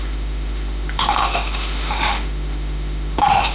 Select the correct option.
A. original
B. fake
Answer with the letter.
B